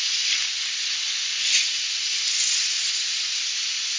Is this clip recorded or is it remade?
recorded